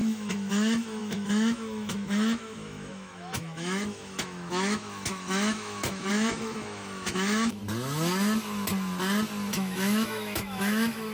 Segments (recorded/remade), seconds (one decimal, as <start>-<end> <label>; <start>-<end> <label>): 0.0-7.6 remade; 7.6-9.5 recorded; 9.5-11.1 remade